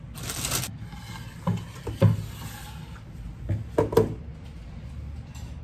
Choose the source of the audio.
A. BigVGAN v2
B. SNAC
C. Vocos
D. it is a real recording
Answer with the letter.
D